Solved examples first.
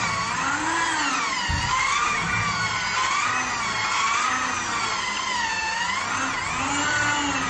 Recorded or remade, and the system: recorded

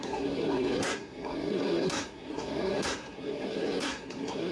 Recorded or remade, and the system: remade, codec, SNAC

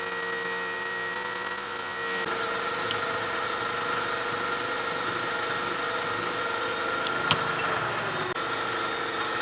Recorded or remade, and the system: recorded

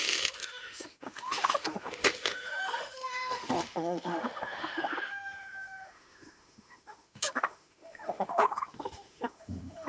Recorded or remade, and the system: remade, autoencoder, DAC-VAE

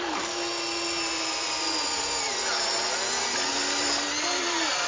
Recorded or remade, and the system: recorded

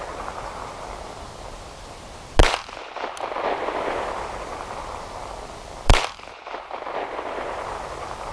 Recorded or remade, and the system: recorded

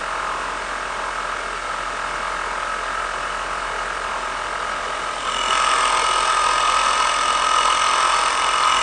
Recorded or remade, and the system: recorded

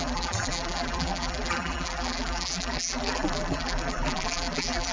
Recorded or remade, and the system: remade, vocoder, BigVGAN v2